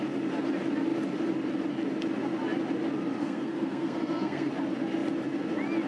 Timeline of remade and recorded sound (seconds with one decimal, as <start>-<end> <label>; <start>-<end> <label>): 0.0-3.2 recorded; 3.2-4.5 remade; 4.5-5.9 recorded